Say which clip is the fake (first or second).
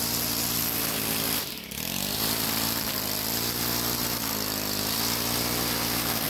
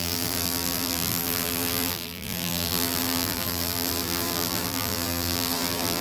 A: second